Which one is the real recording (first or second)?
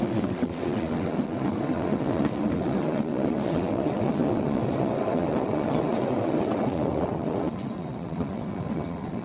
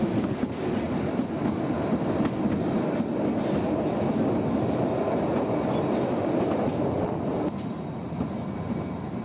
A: second